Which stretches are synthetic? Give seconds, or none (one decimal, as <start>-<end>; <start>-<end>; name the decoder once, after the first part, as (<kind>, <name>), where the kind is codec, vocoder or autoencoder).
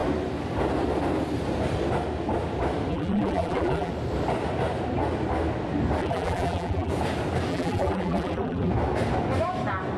2.9-3.9 (vocoder, BigVGAN v2); 6.0-6.9; 7.5-8.7